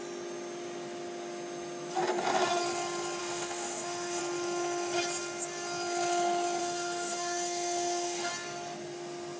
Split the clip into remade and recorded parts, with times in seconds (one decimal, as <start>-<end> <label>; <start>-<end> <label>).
0.0-3.2 recorded; 3.2-4.2 remade; 4.2-6.6 recorded; 6.6-8.3 remade; 8.3-9.4 recorded